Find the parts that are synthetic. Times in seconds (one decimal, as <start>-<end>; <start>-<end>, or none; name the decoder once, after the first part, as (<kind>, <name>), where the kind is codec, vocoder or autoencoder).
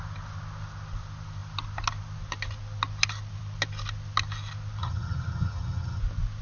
4.8-6.0 (vocoder, HiFi-GAN)